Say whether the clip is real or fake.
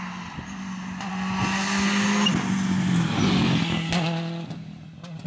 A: real